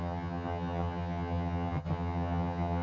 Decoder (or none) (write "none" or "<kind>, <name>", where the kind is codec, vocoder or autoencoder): vocoder, HiFi-GAN